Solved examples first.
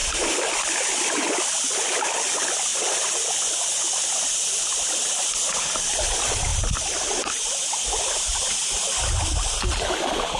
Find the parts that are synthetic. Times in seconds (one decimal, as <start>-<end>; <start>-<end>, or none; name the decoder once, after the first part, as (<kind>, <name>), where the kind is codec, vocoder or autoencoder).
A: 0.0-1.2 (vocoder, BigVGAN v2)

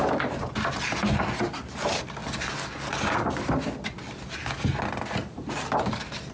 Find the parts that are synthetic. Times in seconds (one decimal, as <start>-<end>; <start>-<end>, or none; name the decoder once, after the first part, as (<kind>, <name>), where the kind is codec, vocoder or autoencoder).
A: none

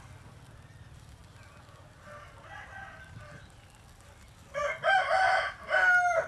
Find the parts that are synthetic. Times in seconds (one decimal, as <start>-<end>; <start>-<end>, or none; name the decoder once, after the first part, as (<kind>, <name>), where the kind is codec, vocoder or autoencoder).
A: none

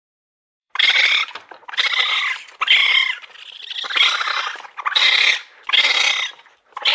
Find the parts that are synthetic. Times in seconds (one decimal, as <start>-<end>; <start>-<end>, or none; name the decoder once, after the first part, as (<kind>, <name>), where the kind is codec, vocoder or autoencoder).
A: 0.6-1.7 (vocoder, BigVGAN v2)

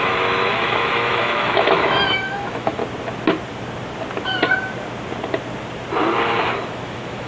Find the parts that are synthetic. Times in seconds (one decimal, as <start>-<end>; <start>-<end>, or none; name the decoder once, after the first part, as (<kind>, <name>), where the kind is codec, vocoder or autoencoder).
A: 0.0-2.8 (autoencoder, DAC-VAE); 6.5-7.3

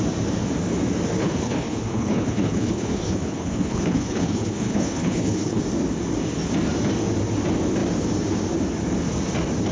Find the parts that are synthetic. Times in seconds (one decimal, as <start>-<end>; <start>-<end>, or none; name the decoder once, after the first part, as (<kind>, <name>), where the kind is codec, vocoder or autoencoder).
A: 1.2-5.6 (codec, HILCodec)

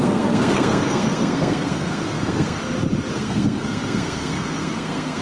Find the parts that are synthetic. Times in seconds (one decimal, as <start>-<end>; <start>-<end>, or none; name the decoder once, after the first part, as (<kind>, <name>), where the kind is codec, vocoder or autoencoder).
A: 0.0-2.6 (codec, SNAC); 3.1-5.2